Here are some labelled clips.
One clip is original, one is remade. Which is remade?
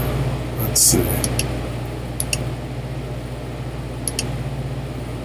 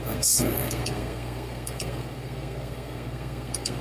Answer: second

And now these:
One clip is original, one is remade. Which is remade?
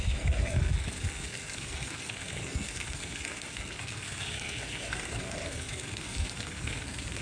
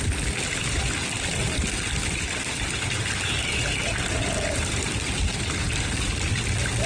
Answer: first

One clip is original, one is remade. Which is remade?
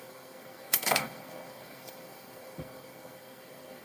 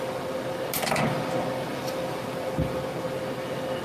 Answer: first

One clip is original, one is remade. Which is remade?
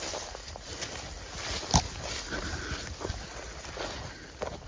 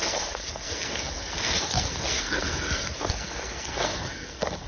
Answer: second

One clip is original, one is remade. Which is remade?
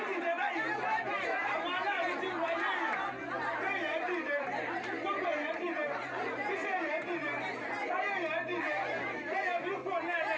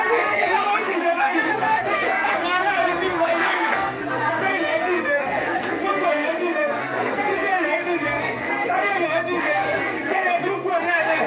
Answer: second